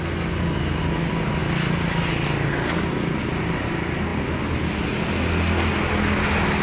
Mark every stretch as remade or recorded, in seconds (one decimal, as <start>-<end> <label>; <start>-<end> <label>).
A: 0.0-6.6 recorded